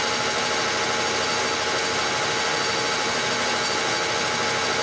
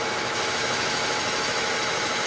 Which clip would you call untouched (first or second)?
first